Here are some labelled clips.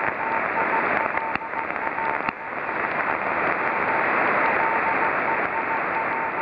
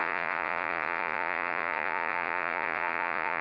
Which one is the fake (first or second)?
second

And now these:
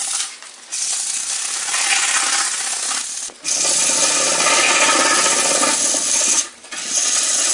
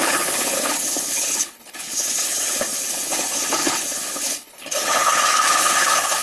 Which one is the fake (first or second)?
second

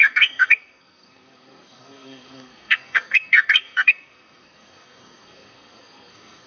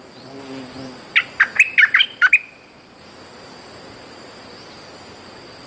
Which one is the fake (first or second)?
first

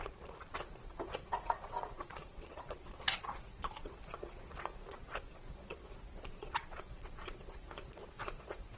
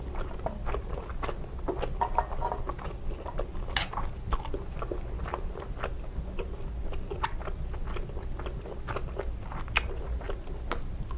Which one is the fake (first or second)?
first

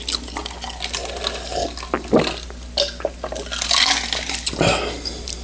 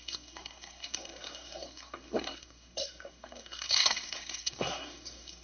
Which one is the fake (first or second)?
second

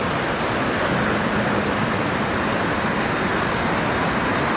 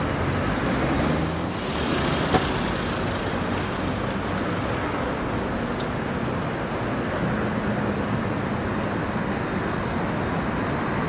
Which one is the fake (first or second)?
first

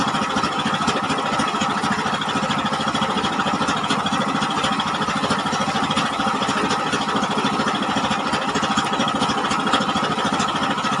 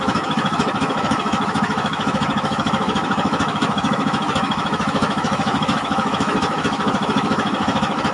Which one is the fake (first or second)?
second